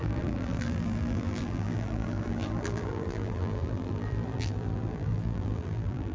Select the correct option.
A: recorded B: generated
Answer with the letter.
B